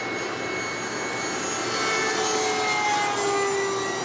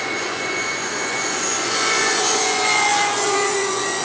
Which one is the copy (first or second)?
second